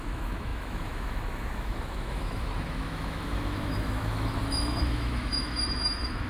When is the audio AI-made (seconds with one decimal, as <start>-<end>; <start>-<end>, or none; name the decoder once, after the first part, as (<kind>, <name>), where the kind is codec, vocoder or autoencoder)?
0.0-6.3 (autoencoder, DAC-VAE)